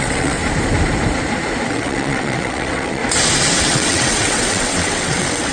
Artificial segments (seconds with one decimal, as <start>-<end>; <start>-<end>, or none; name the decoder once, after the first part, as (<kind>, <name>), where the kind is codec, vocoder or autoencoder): 0.0-0.4 (vocoder, WaveNeXt); 1.7-3.0; 3.6-5.5